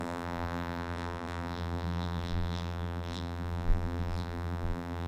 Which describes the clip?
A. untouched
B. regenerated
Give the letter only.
B